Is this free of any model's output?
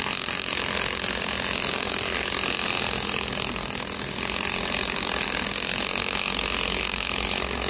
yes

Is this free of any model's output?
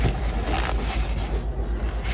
yes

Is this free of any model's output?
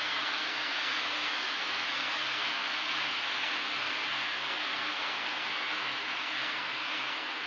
no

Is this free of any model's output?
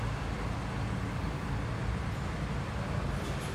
yes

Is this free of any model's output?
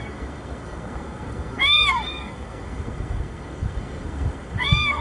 no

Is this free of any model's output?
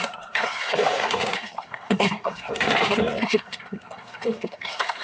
no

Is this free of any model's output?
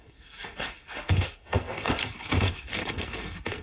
no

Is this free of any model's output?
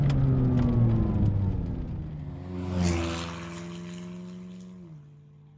yes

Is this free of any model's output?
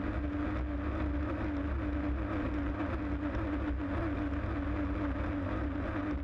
yes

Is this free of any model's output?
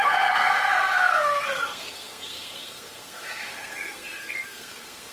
no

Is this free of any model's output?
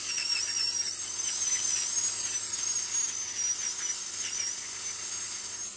yes